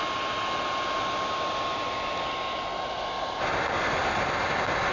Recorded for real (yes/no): yes